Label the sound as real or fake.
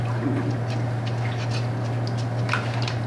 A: real